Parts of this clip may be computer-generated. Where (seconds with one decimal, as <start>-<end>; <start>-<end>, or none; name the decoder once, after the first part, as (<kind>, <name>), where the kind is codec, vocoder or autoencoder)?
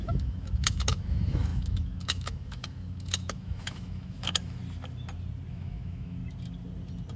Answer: 0.0-4.6 (autoencoder, DAC-VAE); 5.5-6.2